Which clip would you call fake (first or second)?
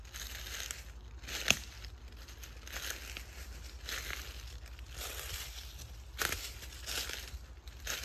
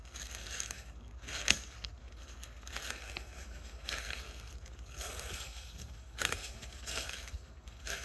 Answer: second